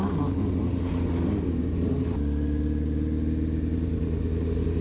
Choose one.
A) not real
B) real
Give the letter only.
B